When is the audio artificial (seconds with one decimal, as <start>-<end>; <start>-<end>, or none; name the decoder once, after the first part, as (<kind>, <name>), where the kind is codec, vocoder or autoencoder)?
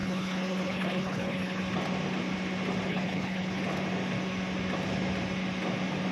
0.0-1.6 (codec, HILCodec); 2.9-3.6